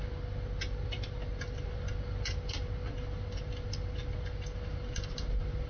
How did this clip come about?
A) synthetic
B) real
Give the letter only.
B